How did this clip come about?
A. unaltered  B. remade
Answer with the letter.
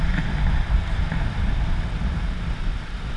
A